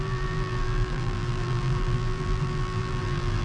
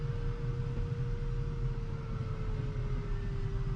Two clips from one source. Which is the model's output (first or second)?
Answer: first